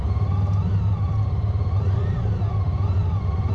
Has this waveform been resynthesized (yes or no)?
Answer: no